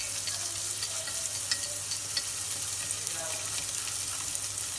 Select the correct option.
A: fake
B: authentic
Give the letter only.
B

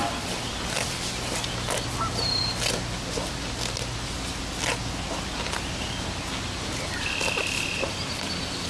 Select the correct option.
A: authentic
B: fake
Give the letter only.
A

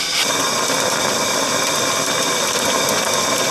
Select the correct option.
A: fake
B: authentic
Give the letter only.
B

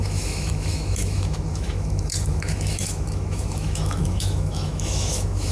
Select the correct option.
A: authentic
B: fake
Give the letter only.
B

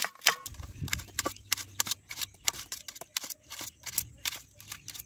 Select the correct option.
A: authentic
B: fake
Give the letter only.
A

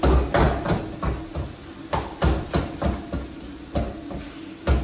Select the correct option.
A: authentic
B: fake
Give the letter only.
A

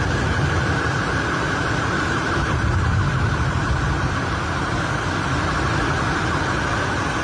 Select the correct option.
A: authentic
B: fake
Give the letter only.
A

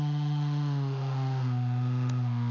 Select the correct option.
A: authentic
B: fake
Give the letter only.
B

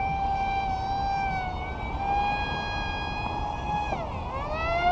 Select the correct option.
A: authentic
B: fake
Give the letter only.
A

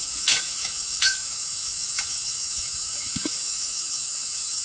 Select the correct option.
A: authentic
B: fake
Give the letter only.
B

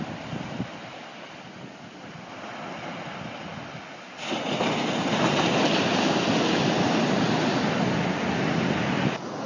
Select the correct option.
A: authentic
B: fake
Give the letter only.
A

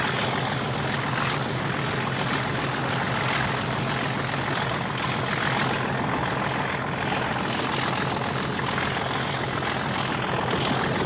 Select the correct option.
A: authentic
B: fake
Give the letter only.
A